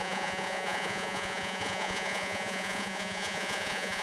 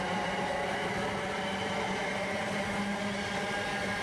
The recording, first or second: second